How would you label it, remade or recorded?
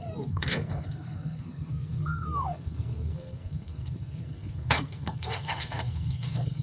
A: remade